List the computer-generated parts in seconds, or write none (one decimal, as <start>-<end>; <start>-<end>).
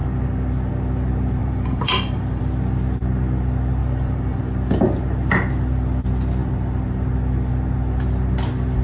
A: 1.4-2.4; 3.8-4.4